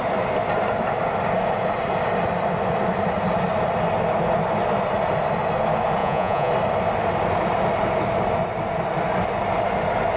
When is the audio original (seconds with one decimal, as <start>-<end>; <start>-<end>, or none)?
0.0-6.0; 6.5-10.2